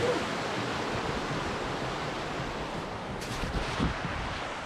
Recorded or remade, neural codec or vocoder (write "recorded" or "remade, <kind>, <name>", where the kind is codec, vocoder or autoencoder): recorded